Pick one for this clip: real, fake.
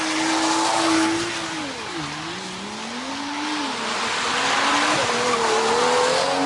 real